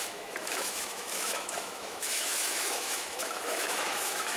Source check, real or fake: fake